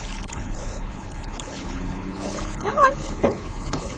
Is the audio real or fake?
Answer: fake